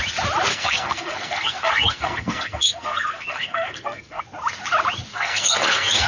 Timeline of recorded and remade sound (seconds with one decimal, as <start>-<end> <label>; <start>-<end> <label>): 0.0-0.5 recorded; 0.5-4.2 remade; 4.2-5.1 recorded; 5.1-6.1 remade